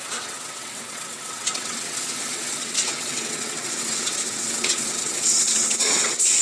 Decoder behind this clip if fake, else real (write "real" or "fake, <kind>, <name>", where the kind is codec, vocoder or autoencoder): fake, vocoder, WaveNeXt